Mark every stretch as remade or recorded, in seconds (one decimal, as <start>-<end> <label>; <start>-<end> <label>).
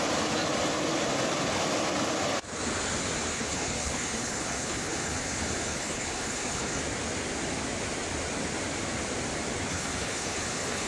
0.0-3.3 recorded; 3.3-6.8 remade; 6.8-9.7 recorded; 9.7-10.9 remade